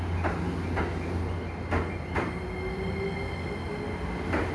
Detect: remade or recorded recorded